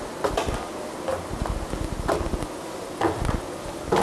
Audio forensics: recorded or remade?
recorded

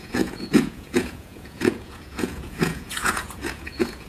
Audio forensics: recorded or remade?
remade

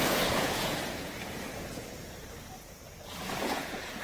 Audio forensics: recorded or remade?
remade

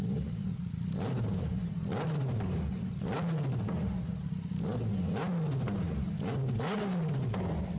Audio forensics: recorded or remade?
recorded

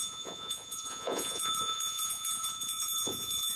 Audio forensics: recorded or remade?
remade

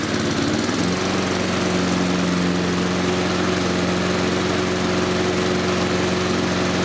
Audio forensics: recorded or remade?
recorded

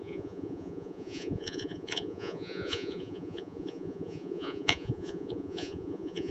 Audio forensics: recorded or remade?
remade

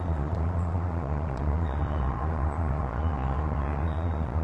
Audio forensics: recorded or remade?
remade